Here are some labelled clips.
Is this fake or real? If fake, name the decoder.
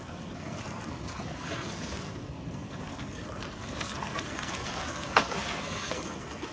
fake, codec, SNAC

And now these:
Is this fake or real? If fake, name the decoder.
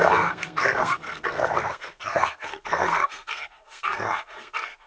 fake, codec, SNAC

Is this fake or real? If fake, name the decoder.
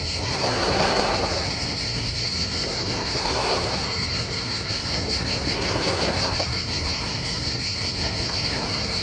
fake, codec, SNAC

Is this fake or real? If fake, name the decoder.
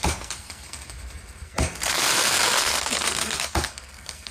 fake, codec, SNAC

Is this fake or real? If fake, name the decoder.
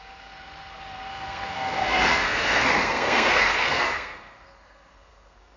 fake, codec, SNAC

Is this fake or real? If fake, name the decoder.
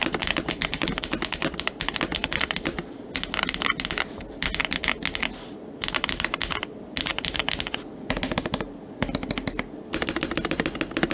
real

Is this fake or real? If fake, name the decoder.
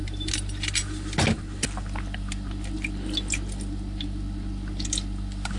real